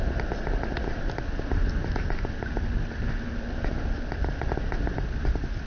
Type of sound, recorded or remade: recorded